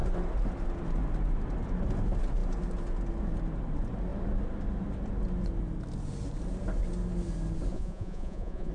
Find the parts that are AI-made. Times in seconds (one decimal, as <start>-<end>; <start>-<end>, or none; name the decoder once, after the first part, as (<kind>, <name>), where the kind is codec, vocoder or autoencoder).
7.7-8.7 (vocoder, Vocos)

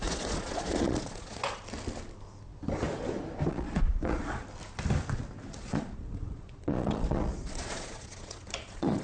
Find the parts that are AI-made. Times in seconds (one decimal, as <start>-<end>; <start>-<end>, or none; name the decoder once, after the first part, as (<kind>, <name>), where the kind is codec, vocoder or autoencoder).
0.0-1.6 (vocoder, Vocos); 3.5-4.4; 5.5-9.0

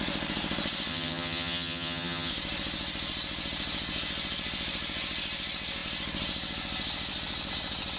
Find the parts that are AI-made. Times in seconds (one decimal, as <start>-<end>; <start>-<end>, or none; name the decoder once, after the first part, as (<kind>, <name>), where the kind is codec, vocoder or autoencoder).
0.9-2.3 (vocoder, HiFi-GAN)

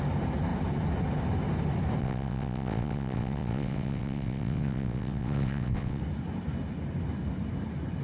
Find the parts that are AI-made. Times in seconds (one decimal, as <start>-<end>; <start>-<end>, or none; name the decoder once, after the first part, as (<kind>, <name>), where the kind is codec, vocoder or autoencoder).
2.0-6.0 (vocoder, WaveNeXt)

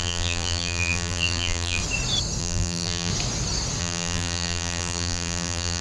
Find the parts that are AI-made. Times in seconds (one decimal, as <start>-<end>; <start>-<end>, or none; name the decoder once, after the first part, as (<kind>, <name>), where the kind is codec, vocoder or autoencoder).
0.0-1.8 (vocoder, BigVGAN v2); 2.4-3.1; 3.8-5.8